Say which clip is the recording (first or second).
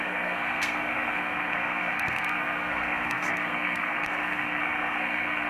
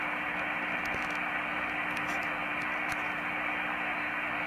second